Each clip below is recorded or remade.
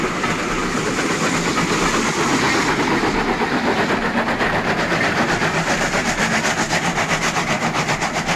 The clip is recorded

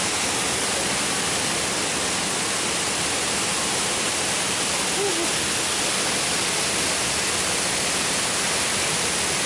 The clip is recorded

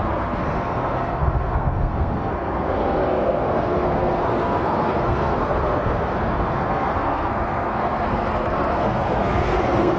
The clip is remade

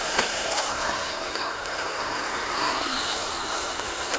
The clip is remade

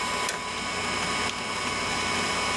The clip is recorded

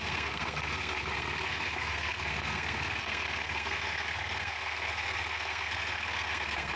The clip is remade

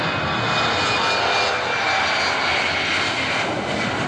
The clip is recorded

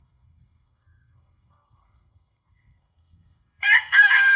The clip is remade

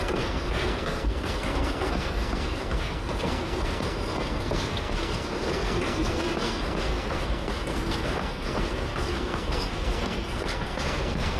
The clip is remade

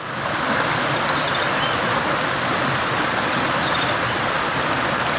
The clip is recorded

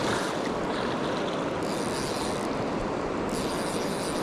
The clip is recorded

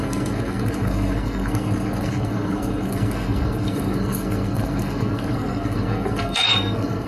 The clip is remade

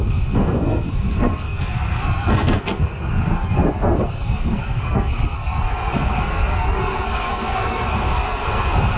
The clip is remade